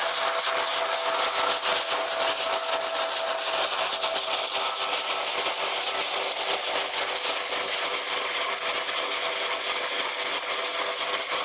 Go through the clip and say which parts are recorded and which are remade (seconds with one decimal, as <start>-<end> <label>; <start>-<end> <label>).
0.0-11.4 recorded